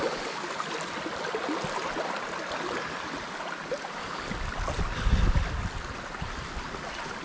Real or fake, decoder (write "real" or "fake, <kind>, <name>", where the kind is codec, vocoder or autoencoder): real